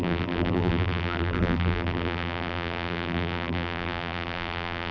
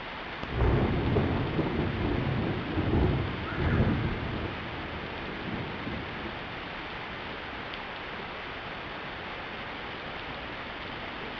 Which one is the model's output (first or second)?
first